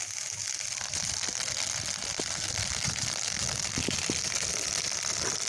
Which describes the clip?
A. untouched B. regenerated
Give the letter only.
A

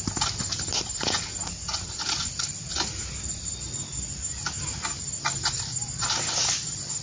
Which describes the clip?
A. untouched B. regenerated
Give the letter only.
A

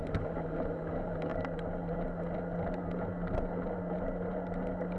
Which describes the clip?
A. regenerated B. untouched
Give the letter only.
B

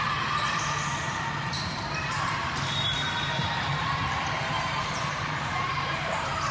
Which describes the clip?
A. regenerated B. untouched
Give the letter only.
A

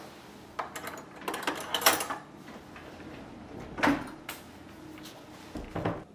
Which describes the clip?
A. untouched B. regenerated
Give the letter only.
A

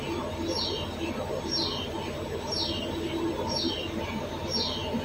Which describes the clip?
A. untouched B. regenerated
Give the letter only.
A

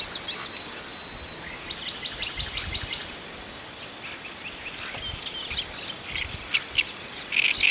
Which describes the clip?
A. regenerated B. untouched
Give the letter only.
B